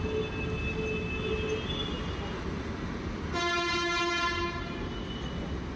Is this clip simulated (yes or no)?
no